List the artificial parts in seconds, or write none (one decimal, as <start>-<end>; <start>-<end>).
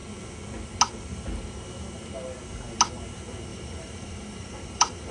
3.5-5.1